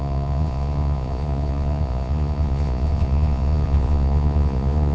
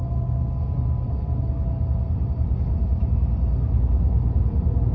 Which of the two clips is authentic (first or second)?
second